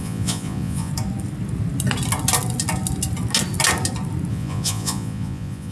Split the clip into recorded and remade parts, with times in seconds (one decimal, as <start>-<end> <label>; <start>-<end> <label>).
0.0-0.9 remade; 0.9-4.3 recorded; 4.3-5.7 remade